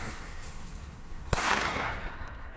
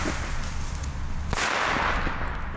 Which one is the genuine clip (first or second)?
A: second